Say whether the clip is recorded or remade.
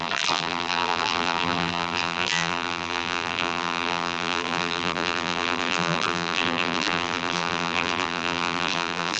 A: remade